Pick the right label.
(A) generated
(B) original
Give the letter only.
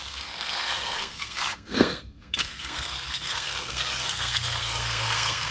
A